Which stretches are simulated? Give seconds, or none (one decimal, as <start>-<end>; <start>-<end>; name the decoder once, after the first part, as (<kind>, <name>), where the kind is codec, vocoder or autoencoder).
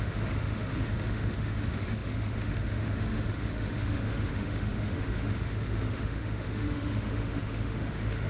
0.0-8.3 (autoencoder, DAC-VAE)